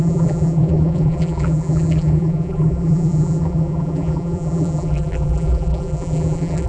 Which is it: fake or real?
fake